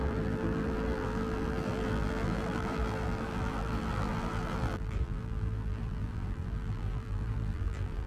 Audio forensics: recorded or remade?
remade